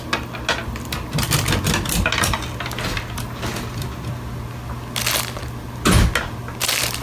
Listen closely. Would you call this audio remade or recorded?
recorded